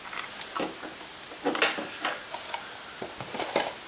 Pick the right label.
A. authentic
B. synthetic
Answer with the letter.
A